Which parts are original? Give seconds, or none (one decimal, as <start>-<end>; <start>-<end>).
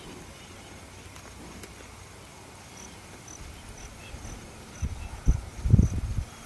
0.0-6.5